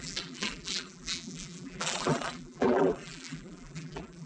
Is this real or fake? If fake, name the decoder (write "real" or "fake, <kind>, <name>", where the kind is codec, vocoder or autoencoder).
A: fake, vocoder, BigVGAN v2